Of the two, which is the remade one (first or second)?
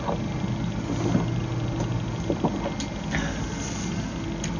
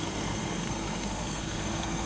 second